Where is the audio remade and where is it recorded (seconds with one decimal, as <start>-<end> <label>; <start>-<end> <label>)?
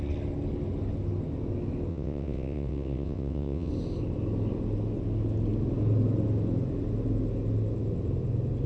0.0-1.9 recorded; 1.9-3.7 remade; 3.7-8.7 recorded